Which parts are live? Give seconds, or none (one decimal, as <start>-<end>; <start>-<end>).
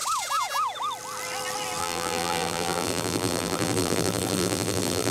0.0-1.8